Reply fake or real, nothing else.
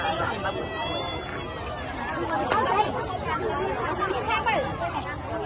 real